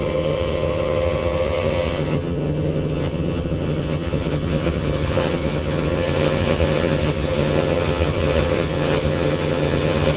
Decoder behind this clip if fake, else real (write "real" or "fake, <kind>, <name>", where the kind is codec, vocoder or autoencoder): fake, vocoder, HiFi-GAN